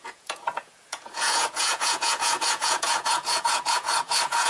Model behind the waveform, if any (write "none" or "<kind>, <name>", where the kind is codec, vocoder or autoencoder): vocoder, Vocos